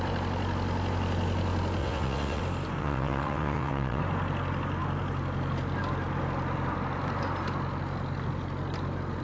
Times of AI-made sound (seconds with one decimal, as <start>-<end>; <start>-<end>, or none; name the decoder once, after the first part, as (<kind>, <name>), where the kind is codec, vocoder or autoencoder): 1.8-2.4 (vocoder, WaveNeXt); 2.8-4.0